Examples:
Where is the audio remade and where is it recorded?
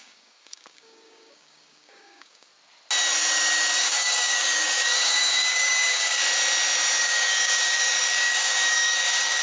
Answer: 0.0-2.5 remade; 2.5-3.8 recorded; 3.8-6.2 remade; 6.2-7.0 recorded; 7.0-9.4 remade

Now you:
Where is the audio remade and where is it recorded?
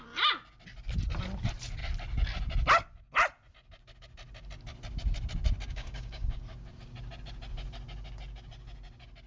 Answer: 0.0-5.7 recorded; 5.7-6.4 remade; 6.4-9.3 recorded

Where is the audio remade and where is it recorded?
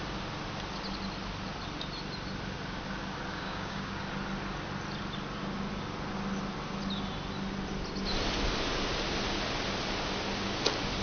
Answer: 0.0-3.3 recorded; 3.3-4.0 remade; 4.0-11.0 recorded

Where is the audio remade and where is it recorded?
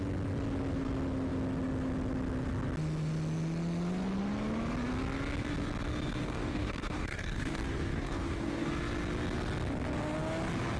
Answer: 0.0-6.2 recorded; 6.2-8.7 remade; 8.7-10.8 recorded